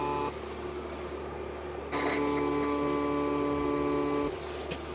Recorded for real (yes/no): yes